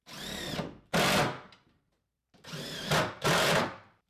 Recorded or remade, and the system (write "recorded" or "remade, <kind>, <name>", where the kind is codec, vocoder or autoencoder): remade, vocoder, BigVGAN v2